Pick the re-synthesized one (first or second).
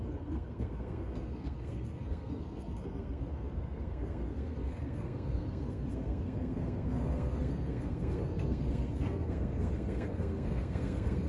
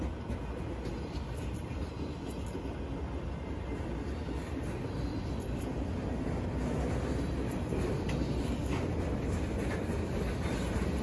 first